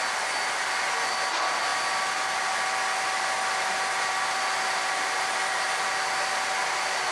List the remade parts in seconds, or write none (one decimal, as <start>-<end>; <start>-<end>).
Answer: none